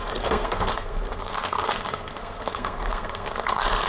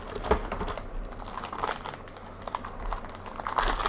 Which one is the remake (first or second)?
first